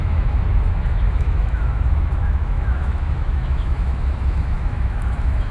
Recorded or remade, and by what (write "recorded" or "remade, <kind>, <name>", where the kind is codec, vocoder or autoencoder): remade, autoencoder, DAC-VAE